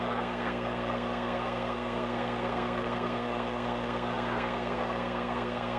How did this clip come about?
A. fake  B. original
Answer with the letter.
A